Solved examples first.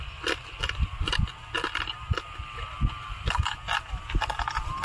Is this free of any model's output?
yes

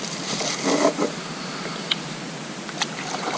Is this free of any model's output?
yes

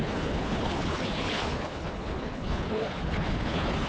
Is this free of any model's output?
no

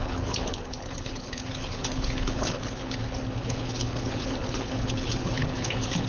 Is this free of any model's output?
no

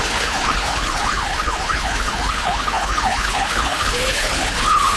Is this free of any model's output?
no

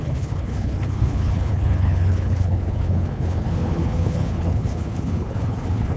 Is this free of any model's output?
no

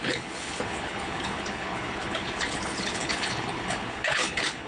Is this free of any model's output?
no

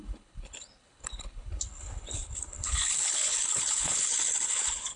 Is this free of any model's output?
no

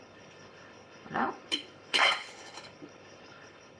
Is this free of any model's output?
no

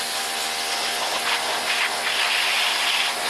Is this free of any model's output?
yes